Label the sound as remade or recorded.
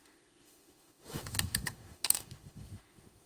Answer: remade